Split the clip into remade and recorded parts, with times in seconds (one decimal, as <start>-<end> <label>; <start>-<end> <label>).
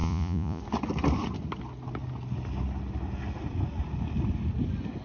0.0-0.6 remade; 0.6-5.0 recorded